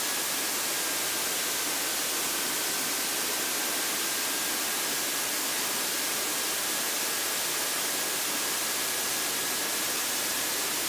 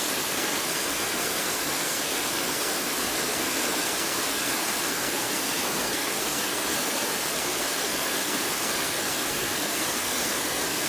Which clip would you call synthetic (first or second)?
second